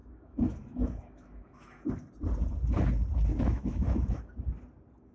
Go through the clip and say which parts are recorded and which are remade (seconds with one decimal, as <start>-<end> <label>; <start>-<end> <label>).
0.0-1.9 remade; 1.9-3.3 recorded; 3.3-4.2 remade; 4.2-5.1 recorded